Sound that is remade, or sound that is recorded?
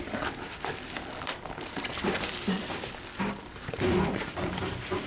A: remade